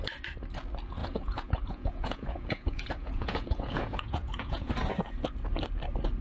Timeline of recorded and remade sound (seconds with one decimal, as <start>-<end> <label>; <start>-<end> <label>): 0.0-1.0 recorded; 1.0-4.7 remade; 4.7-6.2 recorded